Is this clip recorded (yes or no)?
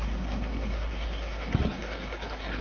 no